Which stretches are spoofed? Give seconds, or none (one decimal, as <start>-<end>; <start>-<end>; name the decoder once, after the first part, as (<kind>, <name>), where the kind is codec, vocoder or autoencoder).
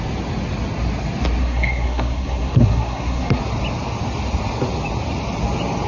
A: 1.4-3.4 (codec, SNAC)